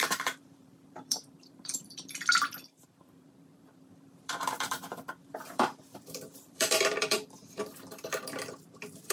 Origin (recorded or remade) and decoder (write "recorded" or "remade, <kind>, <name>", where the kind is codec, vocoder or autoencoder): remade, vocoder, BigVGAN v2